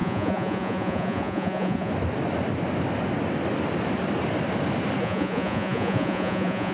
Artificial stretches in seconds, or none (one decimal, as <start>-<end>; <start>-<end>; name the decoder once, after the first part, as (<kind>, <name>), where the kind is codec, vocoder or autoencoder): 0.0-1.9 (vocoder, Vocos); 5.0-6.7